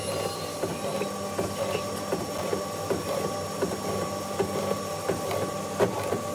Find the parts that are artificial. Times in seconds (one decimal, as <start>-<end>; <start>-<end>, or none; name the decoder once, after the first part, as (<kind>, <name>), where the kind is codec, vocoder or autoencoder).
none